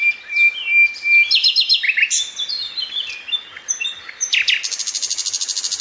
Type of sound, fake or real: real